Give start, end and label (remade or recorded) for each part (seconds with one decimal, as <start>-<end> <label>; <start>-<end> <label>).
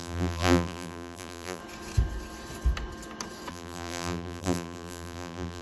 0.0-1.6 remade; 1.6-3.5 recorded; 3.5-5.6 remade